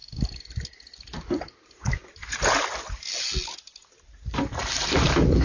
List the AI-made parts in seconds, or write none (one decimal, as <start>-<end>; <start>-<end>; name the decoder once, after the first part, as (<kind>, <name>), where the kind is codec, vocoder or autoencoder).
none